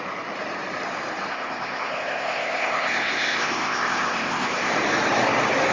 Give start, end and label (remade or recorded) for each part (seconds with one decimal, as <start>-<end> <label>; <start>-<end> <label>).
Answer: 0.0-1.3 recorded; 1.3-4.7 remade; 4.7-5.7 recorded